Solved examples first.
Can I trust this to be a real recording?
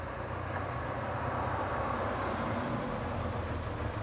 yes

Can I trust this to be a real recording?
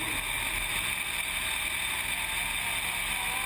yes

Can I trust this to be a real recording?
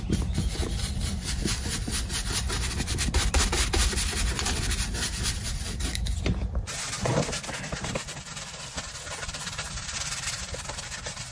no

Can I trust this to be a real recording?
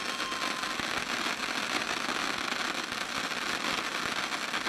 yes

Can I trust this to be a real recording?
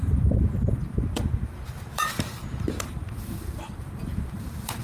no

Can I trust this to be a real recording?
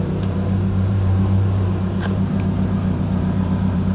no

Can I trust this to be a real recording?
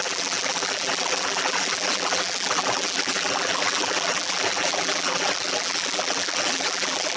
no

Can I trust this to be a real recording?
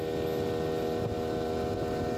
yes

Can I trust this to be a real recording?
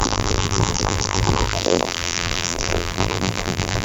no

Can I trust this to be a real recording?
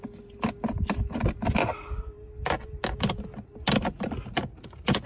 yes